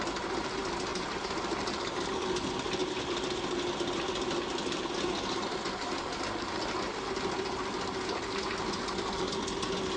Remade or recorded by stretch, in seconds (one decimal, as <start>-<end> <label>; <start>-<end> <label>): 0.0-10.0 recorded